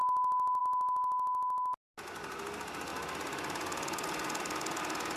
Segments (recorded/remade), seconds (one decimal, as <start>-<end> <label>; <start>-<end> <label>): 0.0-5.2 recorded